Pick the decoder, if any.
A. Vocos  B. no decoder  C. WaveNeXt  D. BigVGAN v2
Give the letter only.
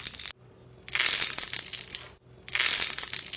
B